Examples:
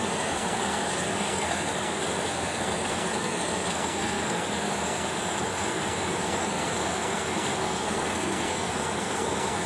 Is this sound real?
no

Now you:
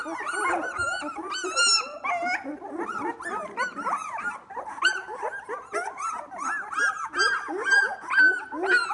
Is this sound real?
yes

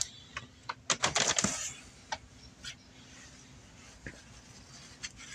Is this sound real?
yes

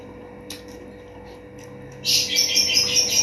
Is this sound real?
yes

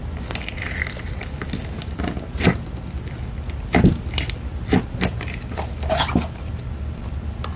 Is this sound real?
yes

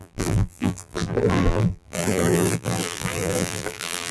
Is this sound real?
no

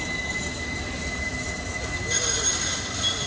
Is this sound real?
yes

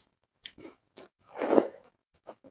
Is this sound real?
no